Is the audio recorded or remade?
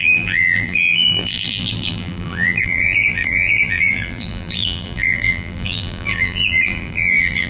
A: remade